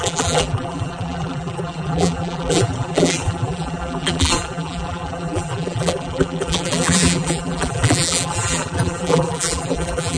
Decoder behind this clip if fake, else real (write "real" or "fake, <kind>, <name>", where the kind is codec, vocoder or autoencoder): fake, vocoder, BigVGAN v2